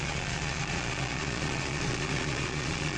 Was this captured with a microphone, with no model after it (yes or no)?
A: no